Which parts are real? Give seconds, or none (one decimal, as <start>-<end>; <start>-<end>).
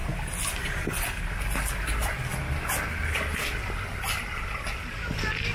0.0-5.5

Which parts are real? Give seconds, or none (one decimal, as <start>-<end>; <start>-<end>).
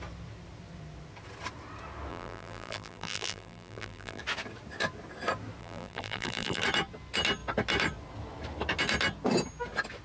0.0-2.1; 4.2-5.6; 6.6-10.0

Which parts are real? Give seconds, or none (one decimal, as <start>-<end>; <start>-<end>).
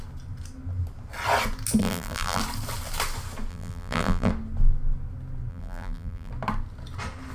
0.0-1.8; 2.4-3.5; 4.3-5.5; 6.3-7.3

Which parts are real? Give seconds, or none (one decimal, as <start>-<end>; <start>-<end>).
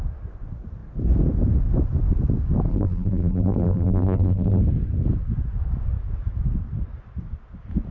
0.0-2.7; 4.6-7.9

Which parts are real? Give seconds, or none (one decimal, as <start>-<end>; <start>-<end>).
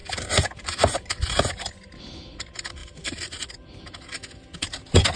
1.4-2.8; 3.5-5.2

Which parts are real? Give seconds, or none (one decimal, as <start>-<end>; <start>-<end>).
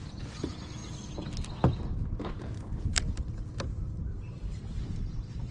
0.0-2.9; 4.6-5.5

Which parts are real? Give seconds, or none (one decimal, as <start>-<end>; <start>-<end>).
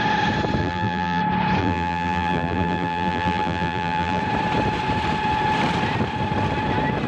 0.0-0.6; 1.2-1.6; 4.2-7.1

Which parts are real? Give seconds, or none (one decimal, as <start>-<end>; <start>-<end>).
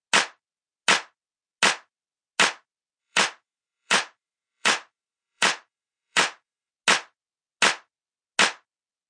0.0-3.0; 6.7-9.1